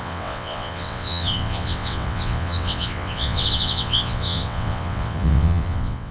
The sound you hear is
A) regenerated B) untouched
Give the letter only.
A